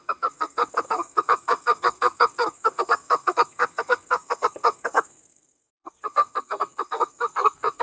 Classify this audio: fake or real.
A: fake